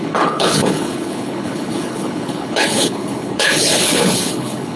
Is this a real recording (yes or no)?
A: no